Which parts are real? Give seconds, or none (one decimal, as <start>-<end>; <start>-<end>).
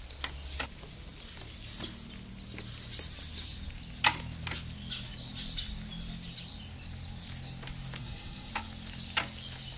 0.0-8.0; 8.5-9.8